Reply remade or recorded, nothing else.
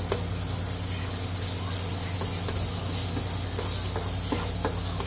recorded